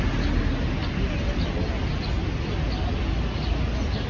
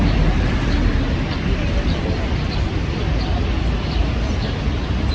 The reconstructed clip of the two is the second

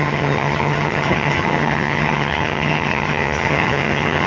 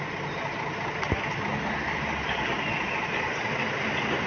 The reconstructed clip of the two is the first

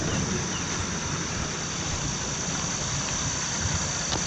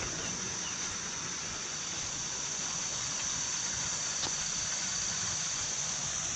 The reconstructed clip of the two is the second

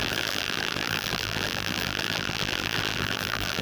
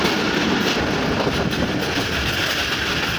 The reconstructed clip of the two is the first